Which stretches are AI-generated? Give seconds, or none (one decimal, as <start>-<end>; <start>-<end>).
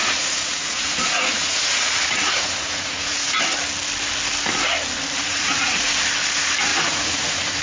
0.0-3.4; 5.2-5.9; 6.7-7.6